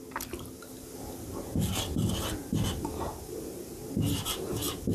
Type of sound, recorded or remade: recorded